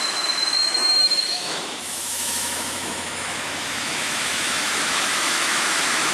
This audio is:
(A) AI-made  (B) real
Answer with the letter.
A